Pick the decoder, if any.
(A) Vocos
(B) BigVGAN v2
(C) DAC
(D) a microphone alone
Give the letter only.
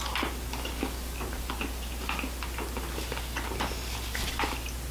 B